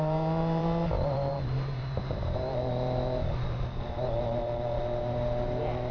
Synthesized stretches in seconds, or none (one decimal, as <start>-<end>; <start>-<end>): 0.0-5.9

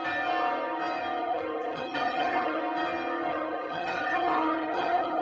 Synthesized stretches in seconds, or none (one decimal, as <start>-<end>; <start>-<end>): 1.2-2.6; 3.3-5.2

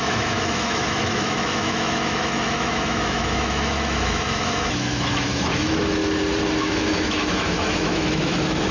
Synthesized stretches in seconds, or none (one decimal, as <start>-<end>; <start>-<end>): 0.0-6.0; 6.6-8.7

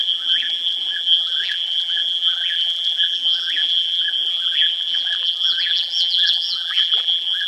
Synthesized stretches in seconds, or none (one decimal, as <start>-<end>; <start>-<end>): 0.0-7.5

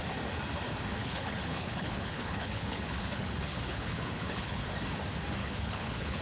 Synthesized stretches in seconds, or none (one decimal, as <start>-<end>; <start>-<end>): 1.0-4.7; 5.4-6.2